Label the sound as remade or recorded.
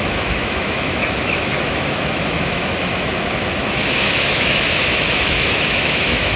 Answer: remade